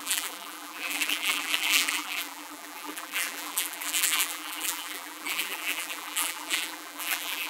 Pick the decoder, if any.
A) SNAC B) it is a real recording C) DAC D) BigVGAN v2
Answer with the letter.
D